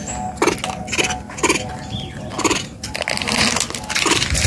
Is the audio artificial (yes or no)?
no